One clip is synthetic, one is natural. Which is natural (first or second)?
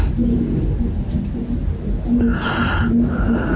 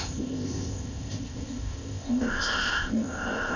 first